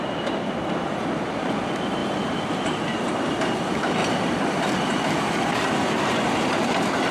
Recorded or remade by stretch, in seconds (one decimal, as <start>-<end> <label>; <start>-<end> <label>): 0.0-2.0 recorded; 2.0-2.5 remade; 2.5-4.0 recorded; 4.0-6.3 remade; 6.3-7.1 recorded